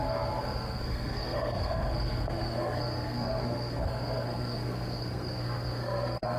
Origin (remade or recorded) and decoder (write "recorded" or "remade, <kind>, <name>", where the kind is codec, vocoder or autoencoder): remade, codec, SNAC